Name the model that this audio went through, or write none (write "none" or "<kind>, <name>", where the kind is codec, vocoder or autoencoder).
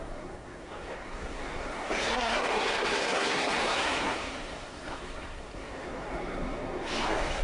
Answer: codec, SNAC